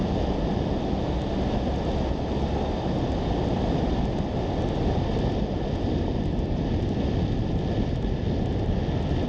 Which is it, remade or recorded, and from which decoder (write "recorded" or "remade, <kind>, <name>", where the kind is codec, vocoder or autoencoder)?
recorded